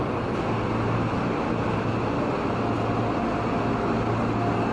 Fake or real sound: real